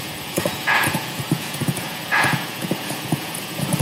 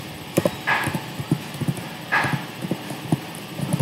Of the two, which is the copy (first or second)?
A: first